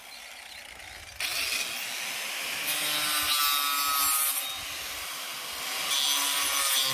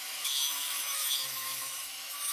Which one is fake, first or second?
second